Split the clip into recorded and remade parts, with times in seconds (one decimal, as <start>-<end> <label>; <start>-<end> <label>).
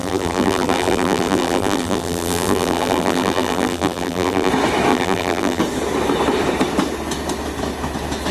0.0-4.5 remade; 4.5-4.9 recorded; 4.9-5.6 remade; 5.6-8.3 recorded